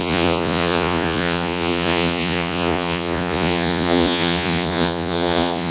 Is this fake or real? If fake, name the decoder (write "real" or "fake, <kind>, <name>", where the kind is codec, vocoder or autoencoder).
fake, vocoder, Vocos